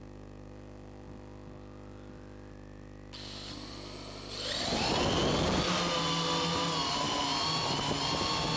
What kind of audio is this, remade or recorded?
recorded